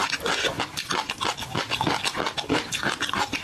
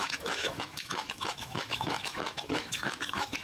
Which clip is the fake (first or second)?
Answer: second